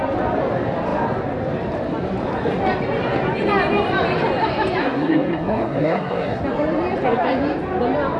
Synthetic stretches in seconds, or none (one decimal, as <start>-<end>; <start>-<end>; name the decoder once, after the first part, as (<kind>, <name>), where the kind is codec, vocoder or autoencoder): 4.8-6.4 (codec, SNAC)